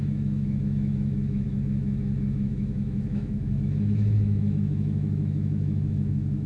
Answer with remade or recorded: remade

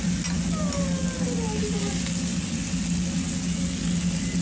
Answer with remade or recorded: recorded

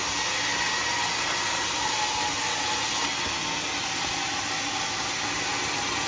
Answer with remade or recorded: recorded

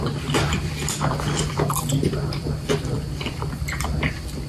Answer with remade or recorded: remade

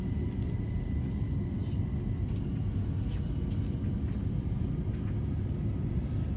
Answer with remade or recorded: recorded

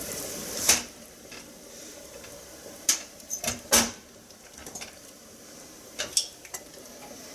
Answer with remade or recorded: remade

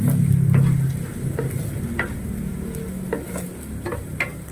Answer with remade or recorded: recorded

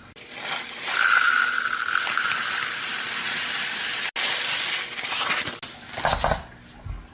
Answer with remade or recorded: recorded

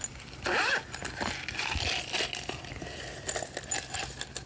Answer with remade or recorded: recorded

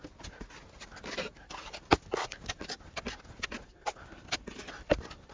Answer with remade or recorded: recorded